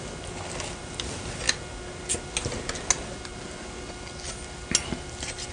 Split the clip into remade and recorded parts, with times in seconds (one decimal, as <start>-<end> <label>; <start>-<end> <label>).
0.0-5.5 recorded